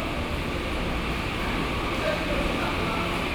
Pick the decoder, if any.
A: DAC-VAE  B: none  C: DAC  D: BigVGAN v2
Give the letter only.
B